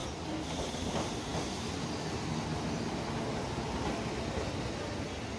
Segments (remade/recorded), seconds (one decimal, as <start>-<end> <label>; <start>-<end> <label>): 0.0-5.4 recorded